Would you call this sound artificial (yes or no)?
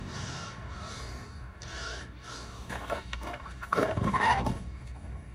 yes